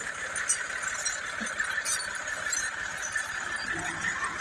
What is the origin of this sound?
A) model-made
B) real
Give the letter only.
B